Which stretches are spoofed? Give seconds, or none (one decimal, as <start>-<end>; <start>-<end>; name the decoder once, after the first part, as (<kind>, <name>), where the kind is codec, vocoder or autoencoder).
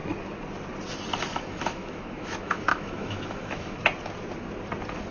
1.3-3.8 (autoencoder, DAC-VAE)